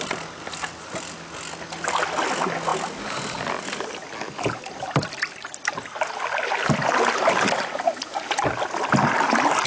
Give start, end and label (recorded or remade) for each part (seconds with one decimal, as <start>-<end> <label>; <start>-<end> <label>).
0.0-9.7 recorded

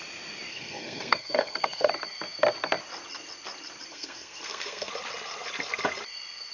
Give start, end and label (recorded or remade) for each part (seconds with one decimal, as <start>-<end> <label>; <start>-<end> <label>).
0.0-0.5 recorded; 0.5-1.9 remade; 1.9-3.9 recorded; 3.9-4.9 remade; 4.9-6.5 recorded

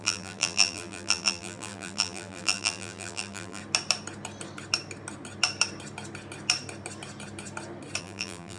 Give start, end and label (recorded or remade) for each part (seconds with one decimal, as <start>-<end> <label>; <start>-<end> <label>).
0.0-3.6 remade; 3.6-8.0 recorded; 8.0-8.6 remade

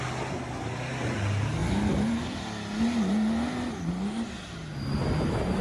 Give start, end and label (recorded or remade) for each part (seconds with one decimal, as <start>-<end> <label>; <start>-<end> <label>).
0.0-5.6 recorded

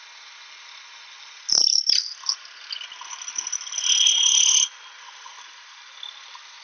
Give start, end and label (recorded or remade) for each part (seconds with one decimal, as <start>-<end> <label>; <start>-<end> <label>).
0.0-6.6 recorded

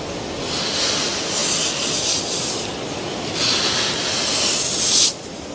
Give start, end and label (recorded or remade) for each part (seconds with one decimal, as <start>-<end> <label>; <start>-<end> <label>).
0.0-5.5 recorded

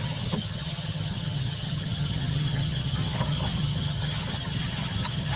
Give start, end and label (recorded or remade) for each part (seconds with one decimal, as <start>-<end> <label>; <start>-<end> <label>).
0.0-5.4 remade

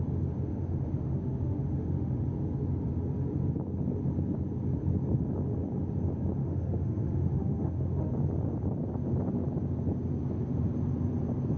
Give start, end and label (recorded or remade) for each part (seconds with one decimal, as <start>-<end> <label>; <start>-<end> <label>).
0.0-0.5 recorded; 0.5-2.2 remade; 2.2-6.4 recorded; 6.4-8.1 remade; 8.1-11.6 recorded